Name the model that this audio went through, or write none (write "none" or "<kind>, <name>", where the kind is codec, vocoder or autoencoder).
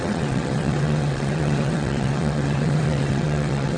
vocoder, WaveNeXt